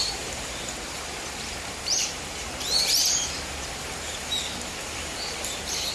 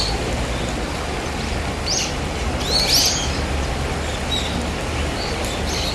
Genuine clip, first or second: second